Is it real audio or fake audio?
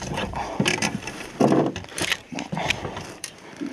fake